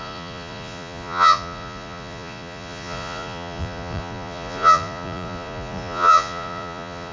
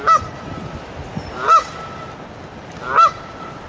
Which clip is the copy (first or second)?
first